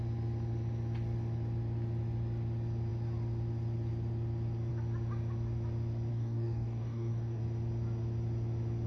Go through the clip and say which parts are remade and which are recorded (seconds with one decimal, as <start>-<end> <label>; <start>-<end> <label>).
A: 0.0-6.1 recorded; 6.1-7.4 remade; 7.4-8.9 recorded